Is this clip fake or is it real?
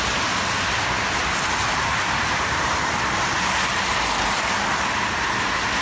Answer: real